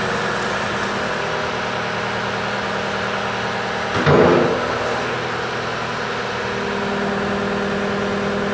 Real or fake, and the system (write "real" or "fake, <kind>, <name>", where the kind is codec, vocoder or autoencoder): real